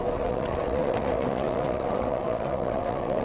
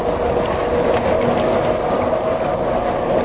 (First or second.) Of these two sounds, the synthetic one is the first